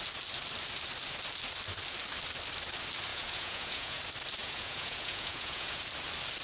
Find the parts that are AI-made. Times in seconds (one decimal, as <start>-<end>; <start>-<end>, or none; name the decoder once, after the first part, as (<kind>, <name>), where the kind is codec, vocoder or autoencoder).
3.1-4.0 (vocoder, Vocos); 4.4-5.8